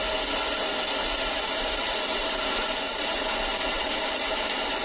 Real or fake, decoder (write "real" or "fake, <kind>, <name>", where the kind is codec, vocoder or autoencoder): fake, vocoder, BigVGAN v2